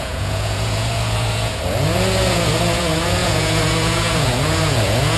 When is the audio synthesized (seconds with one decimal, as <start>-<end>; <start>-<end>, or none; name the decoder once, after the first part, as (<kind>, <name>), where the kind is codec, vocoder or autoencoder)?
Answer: 0.0-5.2 (vocoder, Vocos)